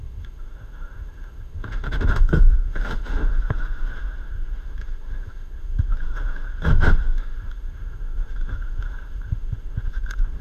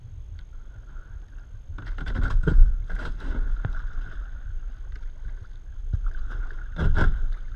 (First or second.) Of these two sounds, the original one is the second